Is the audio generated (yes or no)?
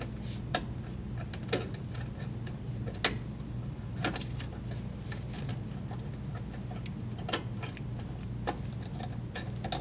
no